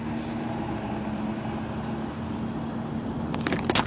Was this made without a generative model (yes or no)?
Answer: yes